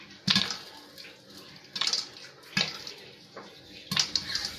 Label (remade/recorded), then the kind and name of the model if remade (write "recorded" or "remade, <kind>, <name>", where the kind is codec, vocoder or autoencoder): recorded